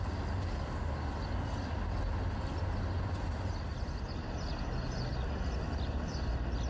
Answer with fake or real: real